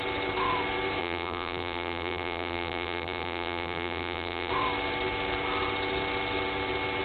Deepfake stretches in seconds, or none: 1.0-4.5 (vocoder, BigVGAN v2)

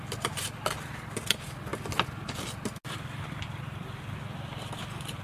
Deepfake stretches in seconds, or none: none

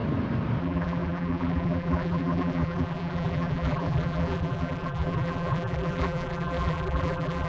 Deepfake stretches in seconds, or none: 0.6-7.5 (vocoder, BigVGAN v2)

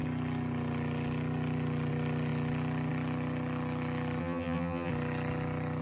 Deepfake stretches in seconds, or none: 4.2-4.9 (vocoder, BigVGAN v2)

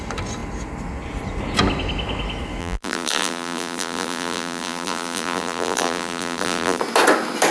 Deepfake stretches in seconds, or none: 2.6-6.8 (vocoder, BigVGAN v2)

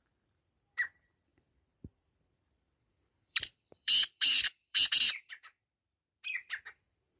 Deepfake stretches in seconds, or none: 0.0-7.2 (vocoder, BigVGAN v2)

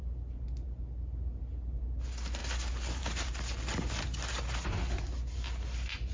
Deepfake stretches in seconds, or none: none

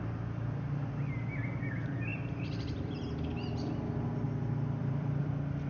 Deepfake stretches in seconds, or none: 2.1-3.1 (vocoder, BigVGAN v2); 4.8-5.3